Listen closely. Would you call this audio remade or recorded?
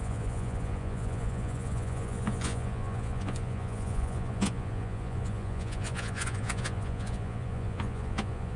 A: remade